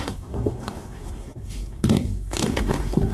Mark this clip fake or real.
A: fake